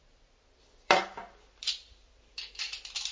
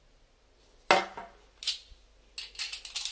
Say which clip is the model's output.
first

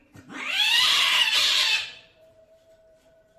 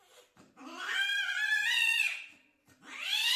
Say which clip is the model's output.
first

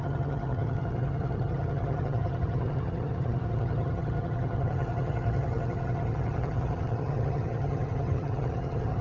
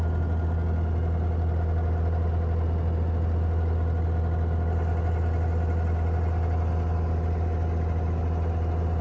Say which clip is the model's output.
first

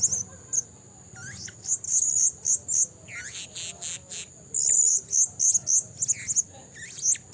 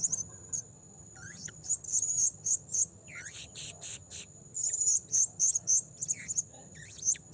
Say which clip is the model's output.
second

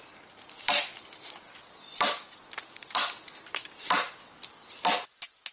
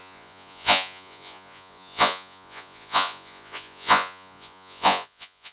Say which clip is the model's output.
second